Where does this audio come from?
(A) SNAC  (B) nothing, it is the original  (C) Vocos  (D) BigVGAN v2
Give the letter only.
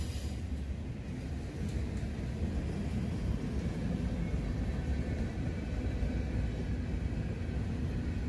B